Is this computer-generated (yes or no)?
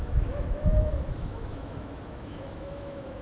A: yes